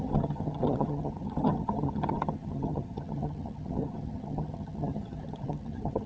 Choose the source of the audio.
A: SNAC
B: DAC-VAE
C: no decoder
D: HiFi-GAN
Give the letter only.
D